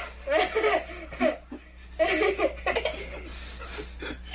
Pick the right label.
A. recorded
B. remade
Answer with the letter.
A